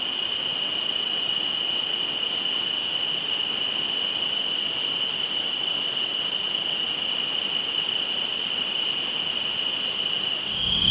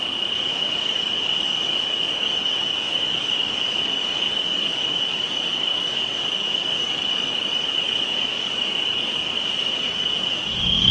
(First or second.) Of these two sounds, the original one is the first